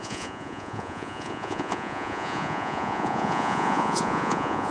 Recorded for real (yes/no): no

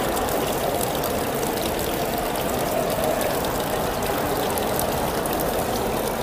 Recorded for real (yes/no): yes